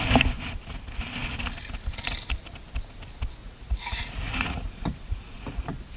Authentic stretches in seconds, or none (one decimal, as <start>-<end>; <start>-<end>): 0.0-3.4; 5.6-6.0